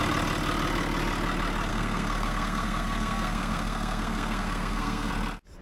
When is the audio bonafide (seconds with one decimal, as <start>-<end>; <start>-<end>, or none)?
0.0-1.7; 5.1-5.6